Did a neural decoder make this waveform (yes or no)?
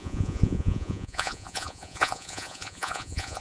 yes